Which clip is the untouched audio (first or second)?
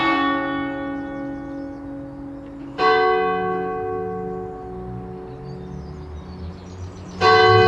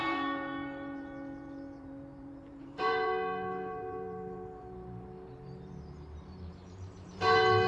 first